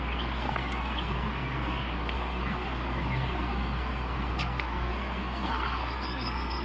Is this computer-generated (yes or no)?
yes